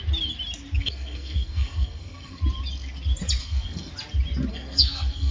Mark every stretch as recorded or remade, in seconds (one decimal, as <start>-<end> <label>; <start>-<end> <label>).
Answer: 0.0-0.8 recorded; 0.8-2.4 remade; 2.4-3.4 recorded; 3.4-3.9 remade; 3.9-4.5 recorded; 4.5-5.3 remade